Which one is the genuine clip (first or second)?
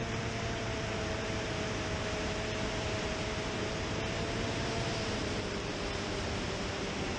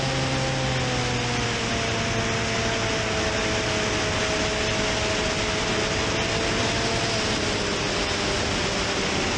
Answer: second